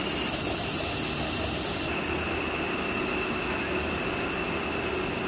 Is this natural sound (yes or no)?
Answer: yes